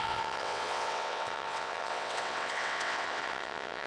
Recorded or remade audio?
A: remade